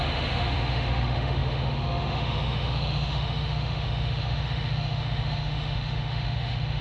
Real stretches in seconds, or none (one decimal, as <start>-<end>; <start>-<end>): none